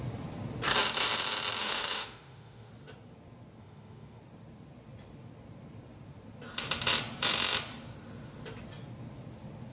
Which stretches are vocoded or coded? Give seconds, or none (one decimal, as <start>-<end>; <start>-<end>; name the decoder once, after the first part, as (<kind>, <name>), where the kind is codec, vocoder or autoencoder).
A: 1.6-2.7 (autoencoder, DAC-VAE); 3.6-4.2